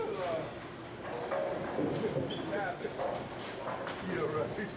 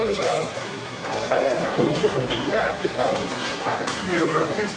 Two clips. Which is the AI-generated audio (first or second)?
second